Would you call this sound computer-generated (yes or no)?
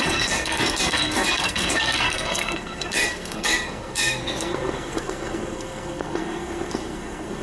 yes